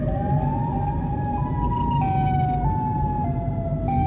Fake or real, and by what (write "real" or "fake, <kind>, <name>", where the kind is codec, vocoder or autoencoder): real